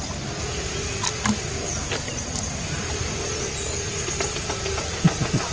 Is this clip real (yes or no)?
yes